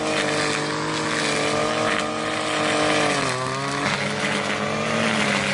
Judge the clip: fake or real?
real